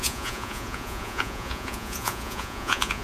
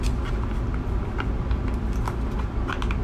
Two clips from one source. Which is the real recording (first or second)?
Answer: second